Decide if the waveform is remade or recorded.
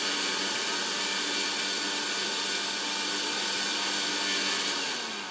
recorded